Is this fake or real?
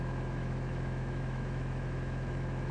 fake